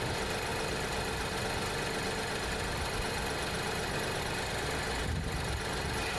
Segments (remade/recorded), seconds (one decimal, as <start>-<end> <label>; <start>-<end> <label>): 0.0-6.2 recorded